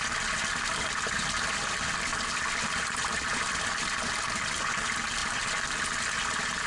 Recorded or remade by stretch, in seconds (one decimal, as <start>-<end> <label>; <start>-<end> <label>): 0.0-2.1 recorded; 2.1-4.7 remade; 4.7-5.2 recorded; 5.2-6.0 remade; 6.0-6.7 recorded